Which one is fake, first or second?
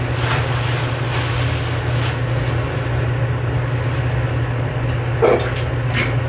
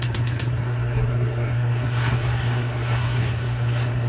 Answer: second